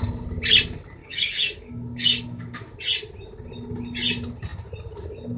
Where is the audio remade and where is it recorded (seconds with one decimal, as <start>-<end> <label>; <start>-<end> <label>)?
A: 0.0-1.0 recorded; 1.0-2.8 remade; 2.8-5.4 recorded